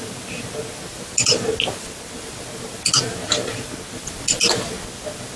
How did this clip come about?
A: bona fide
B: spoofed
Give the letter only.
A